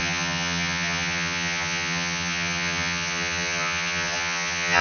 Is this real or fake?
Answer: fake